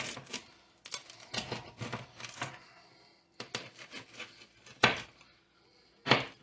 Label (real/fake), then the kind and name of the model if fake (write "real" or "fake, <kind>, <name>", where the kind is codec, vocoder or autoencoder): real